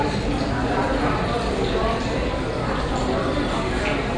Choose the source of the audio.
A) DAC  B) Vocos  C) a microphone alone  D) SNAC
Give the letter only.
C